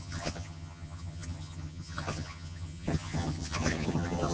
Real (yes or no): no